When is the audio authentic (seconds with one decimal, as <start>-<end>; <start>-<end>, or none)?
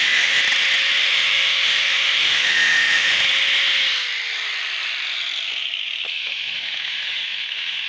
0.4-1.0; 3.2-6.1